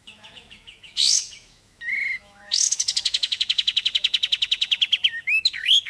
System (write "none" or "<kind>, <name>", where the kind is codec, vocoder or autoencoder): autoencoder, DAC-VAE